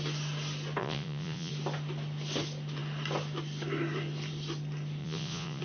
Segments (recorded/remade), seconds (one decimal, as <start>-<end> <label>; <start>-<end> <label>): 0.0-0.8 recorded; 0.8-1.5 remade; 1.5-5.0 recorded; 5.0-5.6 remade